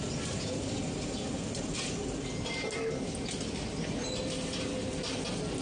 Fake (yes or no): no